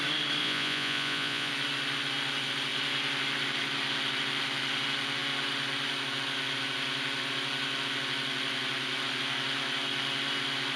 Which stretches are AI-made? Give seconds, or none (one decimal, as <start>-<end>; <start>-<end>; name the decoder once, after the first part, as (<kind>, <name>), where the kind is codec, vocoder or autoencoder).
0.4-1.5 (vocoder, Vocos)